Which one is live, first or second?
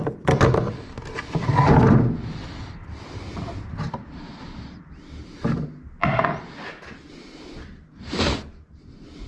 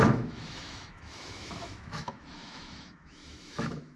first